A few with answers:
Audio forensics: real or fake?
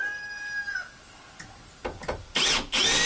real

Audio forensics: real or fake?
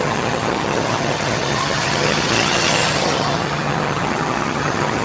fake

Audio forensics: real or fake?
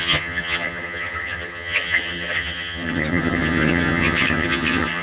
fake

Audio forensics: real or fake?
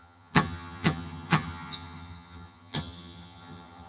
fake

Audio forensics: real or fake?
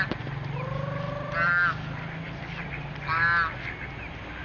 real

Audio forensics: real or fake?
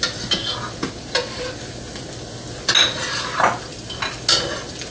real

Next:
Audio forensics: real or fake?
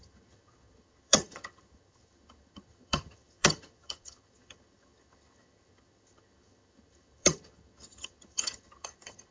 fake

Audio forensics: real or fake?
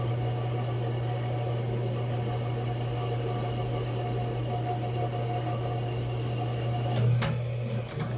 real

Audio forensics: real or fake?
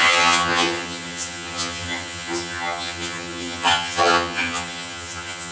fake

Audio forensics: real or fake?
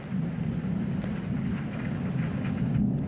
real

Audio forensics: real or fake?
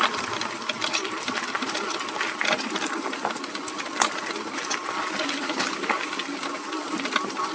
real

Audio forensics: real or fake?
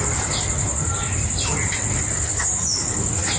real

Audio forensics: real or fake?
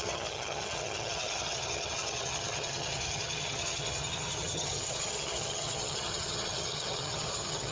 fake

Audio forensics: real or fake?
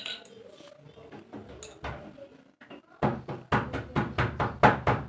real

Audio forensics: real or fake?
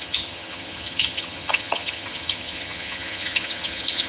fake